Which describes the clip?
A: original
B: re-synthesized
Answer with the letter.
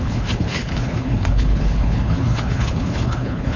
B